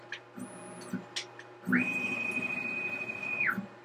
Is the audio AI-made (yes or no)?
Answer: no